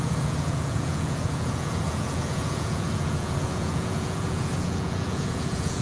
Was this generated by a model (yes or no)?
yes